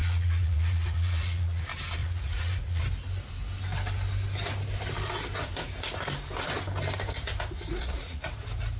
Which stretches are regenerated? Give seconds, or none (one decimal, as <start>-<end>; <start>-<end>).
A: 0.0-1.6; 2.0-2.8; 7.8-8.3